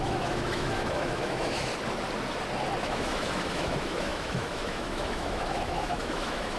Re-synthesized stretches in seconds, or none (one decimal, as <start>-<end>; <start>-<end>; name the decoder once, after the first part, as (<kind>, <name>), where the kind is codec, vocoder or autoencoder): 0.0-1.7 (autoencoder, DAC-VAE); 2.8-6.6